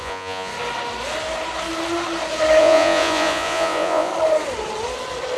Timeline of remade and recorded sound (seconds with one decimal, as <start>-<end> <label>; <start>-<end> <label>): 0.0-0.5 remade; 0.5-2.6 recorded; 2.6-4.1 remade; 4.1-5.4 recorded